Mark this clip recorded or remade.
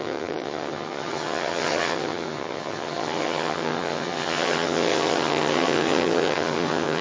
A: remade